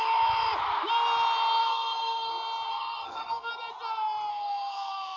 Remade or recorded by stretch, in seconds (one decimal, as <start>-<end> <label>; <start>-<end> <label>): 0.0-1.6 recorded; 1.6-2.3 remade; 2.3-2.7 recorded; 2.7-3.5 remade; 3.5-4.3 recorded; 4.3-5.2 remade